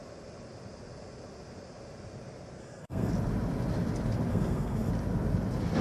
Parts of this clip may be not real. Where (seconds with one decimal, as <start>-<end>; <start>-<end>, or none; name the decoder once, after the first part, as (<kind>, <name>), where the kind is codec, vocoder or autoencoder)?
2.6-3.1 (codec, SNAC); 4.3-4.9